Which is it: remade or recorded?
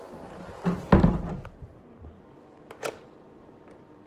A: recorded